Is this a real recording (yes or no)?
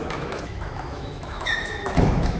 no